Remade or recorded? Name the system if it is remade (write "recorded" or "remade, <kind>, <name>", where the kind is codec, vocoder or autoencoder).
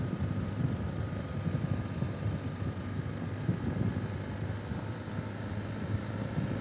recorded